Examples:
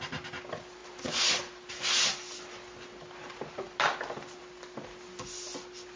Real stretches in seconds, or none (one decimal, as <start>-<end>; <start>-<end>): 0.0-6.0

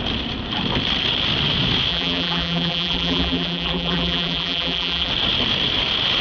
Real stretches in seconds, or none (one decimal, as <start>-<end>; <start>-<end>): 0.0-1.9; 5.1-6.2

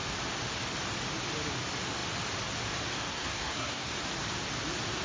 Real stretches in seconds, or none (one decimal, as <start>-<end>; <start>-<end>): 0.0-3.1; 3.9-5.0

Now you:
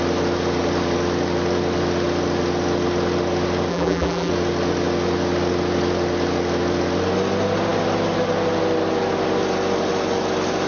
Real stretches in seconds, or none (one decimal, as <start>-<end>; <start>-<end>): 0.0-3.7; 4.3-10.7

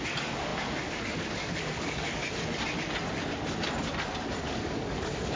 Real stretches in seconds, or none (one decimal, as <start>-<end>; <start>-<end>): 2.2-4.4

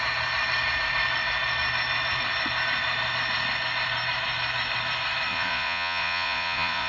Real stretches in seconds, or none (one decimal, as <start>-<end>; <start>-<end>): 0.0-5.3